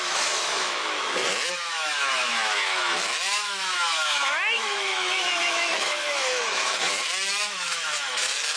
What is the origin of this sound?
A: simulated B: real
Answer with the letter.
A